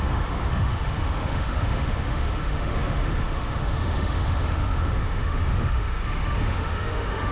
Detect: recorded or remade remade